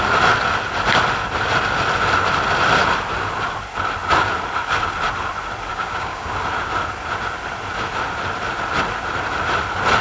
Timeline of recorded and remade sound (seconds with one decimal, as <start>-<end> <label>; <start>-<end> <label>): 0.0-5.7 recorded; 5.7-6.3 remade; 6.3-10.0 recorded